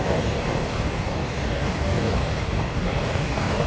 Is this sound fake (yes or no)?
yes